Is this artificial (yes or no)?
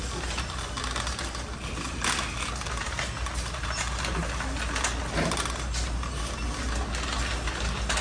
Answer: no